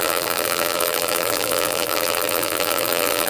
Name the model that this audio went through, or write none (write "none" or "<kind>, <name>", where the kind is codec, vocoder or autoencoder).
vocoder, BigVGAN v2